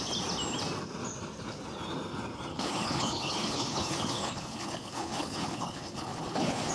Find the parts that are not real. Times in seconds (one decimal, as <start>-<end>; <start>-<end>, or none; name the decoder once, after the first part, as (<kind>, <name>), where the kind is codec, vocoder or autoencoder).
2.5-6.7 (codec, HILCodec)